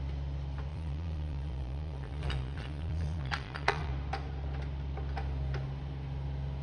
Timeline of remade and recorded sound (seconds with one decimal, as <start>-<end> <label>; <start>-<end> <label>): 0.0-0.7 recorded; 0.7-3.9 remade; 3.9-6.6 recorded